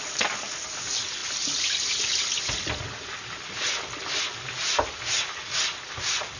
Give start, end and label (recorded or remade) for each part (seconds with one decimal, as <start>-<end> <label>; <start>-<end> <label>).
0.0-6.4 recorded